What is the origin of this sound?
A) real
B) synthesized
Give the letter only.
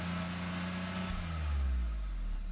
A